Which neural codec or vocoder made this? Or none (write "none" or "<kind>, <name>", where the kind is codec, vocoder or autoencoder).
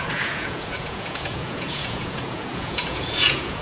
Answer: vocoder, Vocos